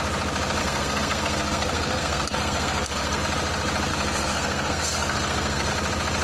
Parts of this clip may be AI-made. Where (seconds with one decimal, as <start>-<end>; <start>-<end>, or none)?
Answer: 0.6-3.2; 3.9-5.7